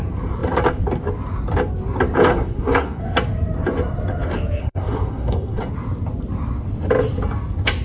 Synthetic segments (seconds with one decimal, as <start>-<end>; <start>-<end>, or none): 2.3-3.0; 4.6-5.6